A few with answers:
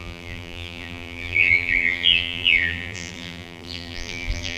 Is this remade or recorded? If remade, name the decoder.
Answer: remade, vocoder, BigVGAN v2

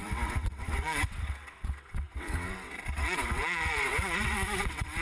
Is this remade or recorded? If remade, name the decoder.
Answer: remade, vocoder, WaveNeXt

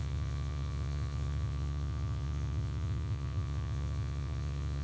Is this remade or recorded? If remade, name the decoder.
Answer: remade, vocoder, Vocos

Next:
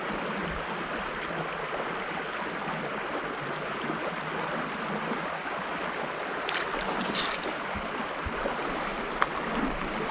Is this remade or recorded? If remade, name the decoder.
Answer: recorded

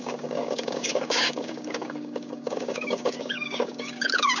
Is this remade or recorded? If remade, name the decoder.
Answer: remade, codec, DAC